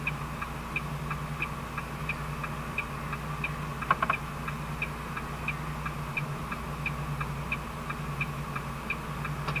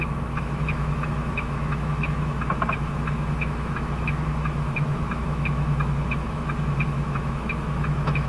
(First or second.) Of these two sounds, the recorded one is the first